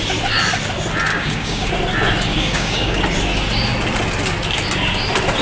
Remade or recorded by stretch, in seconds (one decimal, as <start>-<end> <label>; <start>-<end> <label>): 0.0-1.1 recorded; 1.1-1.7 remade; 1.7-2.3 recorded; 2.3-3.0 remade; 3.0-5.4 recorded